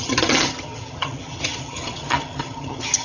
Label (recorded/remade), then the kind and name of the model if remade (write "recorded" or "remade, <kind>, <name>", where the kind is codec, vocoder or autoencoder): remade, vocoder, HiFi-GAN